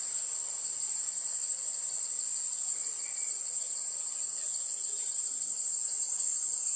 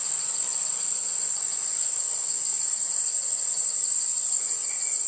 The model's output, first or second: second